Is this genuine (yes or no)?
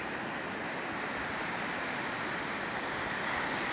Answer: yes